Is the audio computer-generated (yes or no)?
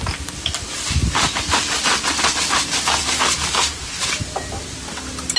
no